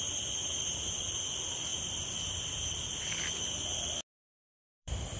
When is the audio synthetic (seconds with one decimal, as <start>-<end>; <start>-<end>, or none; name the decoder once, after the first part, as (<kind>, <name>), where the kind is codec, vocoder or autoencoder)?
0.0-1.7 (vocoder, BigVGAN v2); 4.8-5.2